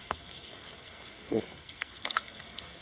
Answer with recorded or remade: remade